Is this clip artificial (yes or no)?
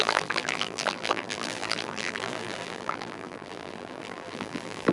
yes